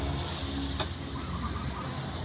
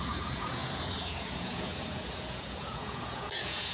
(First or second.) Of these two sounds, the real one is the first